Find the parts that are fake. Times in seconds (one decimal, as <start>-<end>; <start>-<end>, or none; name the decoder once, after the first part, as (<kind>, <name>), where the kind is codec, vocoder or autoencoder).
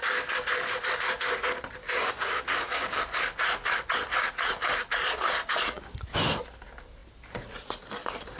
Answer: 1.8-3.0 (codec, DAC)